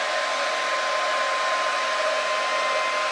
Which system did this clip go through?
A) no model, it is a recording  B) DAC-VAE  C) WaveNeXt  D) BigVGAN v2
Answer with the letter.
A